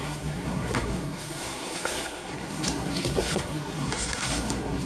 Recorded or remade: remade